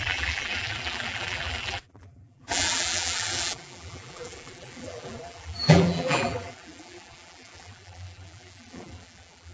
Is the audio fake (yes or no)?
yes